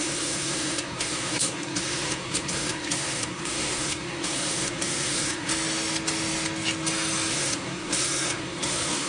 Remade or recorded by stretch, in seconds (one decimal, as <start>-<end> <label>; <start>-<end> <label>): 0.0-5.5 remade; 5.5-7.3 recorded; 7.3-9.1 remade

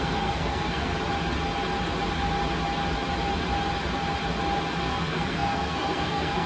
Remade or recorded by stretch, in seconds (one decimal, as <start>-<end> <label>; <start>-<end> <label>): 0.0-0.9 remade; 0.9-4.8 recorded; 4.8-6.5 remade